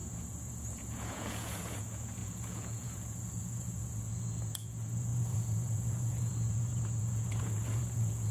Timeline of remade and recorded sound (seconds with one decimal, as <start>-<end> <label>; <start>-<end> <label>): 0.0-8.3 remade